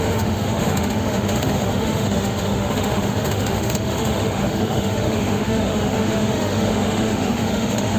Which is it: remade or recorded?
remade